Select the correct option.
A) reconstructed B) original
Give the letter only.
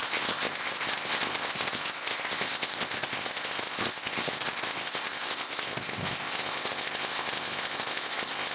A